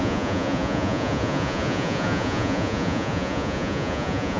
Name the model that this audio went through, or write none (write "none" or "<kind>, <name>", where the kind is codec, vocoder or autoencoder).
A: vocoder, Vocos